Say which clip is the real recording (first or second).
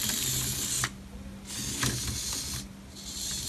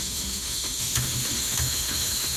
first